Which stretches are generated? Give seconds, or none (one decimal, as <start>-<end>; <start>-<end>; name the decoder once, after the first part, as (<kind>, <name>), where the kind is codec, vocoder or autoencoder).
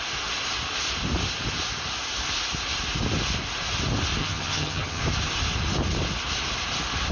4.2-5.0 (vocoder, HiFi-GAN)